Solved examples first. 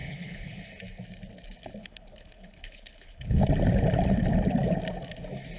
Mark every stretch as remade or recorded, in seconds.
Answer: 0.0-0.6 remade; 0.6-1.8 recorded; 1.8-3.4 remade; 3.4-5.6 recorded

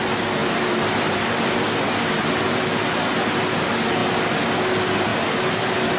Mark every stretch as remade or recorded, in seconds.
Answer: 0.0-0.4 recorded; 0.4-1.8 remade; 1.8-4.0 recorded; 4.0-4.6 remade; 4.6-6.0 recorded

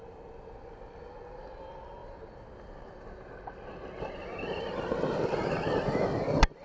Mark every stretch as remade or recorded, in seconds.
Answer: 0.0-6.6 recorded

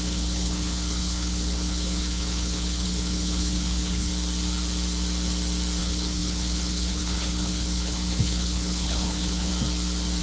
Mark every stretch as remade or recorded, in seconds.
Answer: 0.0-4.1 remade; 4.1-5.8 recorded; 5.8-9.5 remade; 9.5-10.2 recorded

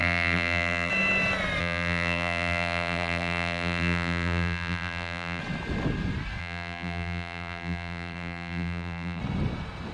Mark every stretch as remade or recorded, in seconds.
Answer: 0.0-0.9 remade; 0.9-1.6 recorded; 1.6-5.4 remade; 5.4-6.4 recorded; 6.4-9.2 remade; 9.2-9.9 recorded

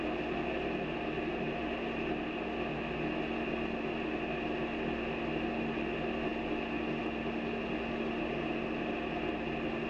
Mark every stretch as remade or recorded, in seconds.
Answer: 0.0-9.9 recorded